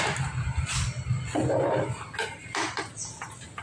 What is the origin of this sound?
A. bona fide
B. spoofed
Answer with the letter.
A